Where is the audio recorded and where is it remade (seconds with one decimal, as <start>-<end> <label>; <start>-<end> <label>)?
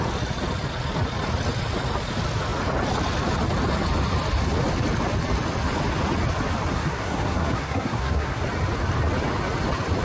0.0-6.7 recorded; 6.7-8.4 remade; 8.4-10.0 recorded